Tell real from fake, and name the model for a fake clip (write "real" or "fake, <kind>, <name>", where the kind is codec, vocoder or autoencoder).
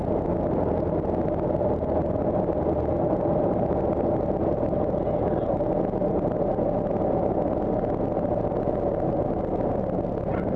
real